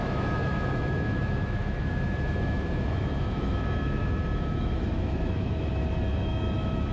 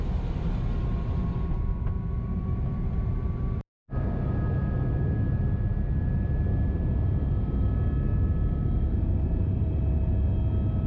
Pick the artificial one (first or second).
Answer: first